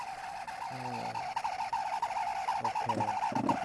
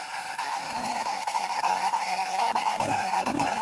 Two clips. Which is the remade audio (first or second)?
second